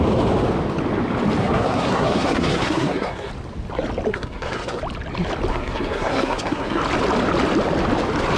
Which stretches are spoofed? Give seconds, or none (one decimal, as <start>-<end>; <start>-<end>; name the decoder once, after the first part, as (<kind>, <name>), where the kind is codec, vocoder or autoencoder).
1.4-3.3 (codec, SNAC); 4.1-4.8; 5.5-6.8